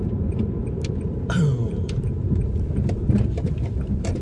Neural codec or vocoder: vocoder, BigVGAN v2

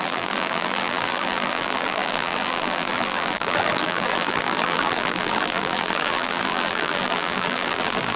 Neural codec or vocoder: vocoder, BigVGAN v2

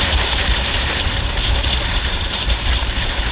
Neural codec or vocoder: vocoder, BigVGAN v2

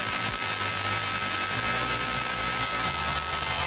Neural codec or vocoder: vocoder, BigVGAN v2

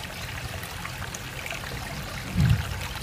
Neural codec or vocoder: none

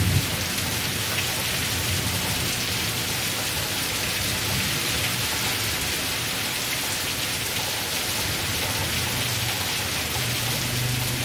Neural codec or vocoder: none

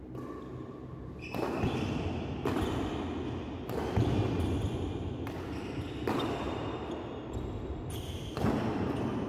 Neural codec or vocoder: none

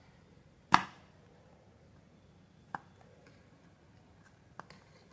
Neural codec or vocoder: none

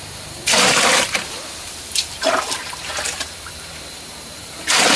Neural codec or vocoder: vocoder, BigVGAN v2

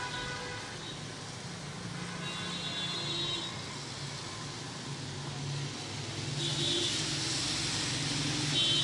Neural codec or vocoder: none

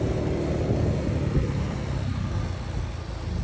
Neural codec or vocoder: none